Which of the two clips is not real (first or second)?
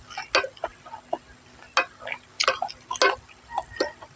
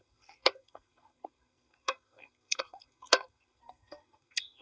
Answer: second